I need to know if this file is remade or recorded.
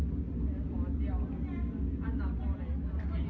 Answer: recorded